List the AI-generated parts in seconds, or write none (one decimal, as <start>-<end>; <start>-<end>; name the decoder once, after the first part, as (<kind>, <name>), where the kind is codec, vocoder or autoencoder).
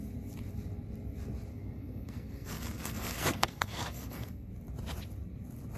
1.5-4.5 (codec, SNAC)